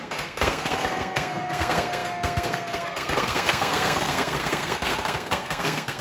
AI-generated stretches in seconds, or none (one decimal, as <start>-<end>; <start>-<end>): 0.0-6.0